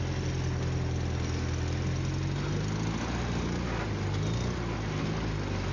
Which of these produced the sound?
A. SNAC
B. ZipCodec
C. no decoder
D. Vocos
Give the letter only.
C